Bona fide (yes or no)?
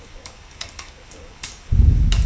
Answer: no